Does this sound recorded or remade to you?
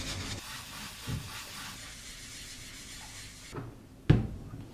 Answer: recorded